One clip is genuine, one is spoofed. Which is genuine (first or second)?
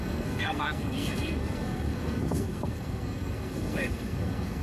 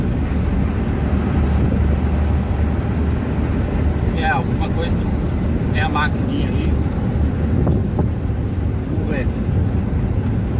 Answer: second